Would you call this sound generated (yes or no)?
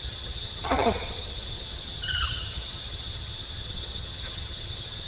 yes